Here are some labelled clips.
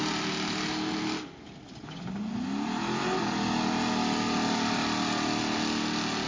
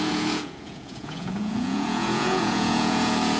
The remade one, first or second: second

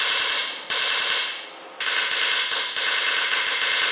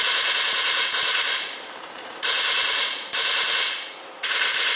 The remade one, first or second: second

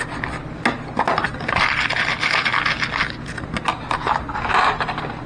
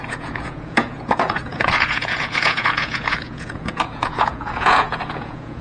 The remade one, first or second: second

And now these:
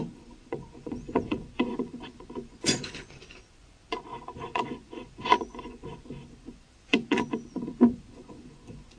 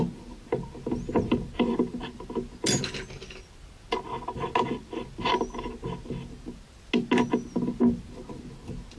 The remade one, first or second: first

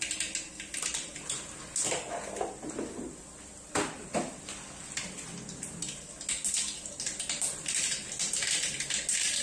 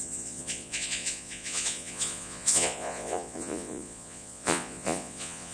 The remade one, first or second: second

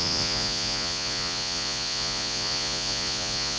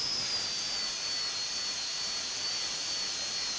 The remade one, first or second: first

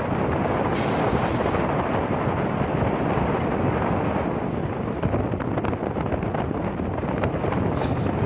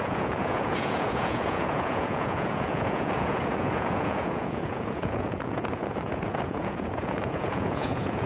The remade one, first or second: second